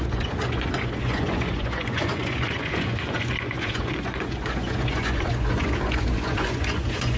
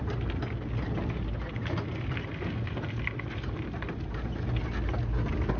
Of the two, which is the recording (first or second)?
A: second